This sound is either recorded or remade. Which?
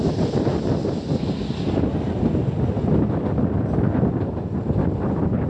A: recorded